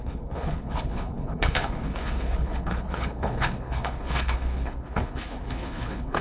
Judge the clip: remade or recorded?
remade